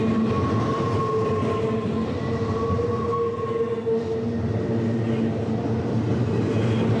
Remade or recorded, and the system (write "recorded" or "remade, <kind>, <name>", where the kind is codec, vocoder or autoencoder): recorded